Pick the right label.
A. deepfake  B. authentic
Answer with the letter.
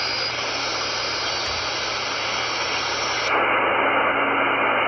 B